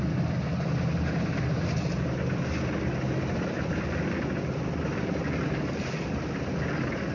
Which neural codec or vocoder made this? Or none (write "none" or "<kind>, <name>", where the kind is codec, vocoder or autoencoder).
none